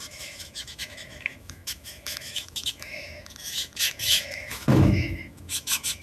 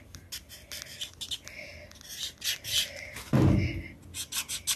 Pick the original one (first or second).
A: second